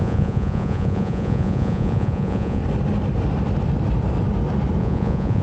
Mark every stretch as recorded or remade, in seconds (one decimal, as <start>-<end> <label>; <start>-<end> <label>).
0.0-2.6 remade; 2.6-4.8 recorded; 4.8-5.4 remade